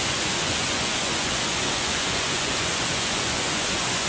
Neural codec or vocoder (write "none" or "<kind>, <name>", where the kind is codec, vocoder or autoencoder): vocoder, Vocos